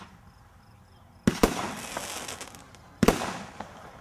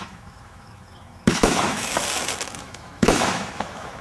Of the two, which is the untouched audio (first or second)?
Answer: first